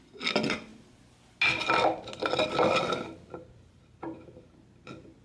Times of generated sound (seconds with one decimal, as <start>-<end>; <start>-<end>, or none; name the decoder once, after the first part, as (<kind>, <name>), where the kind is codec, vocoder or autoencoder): none